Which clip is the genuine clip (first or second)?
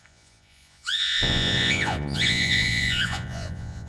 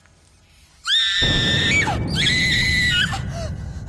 second